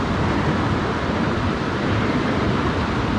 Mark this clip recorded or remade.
recorded